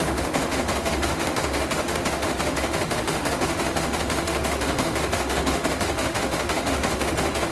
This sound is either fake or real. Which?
fake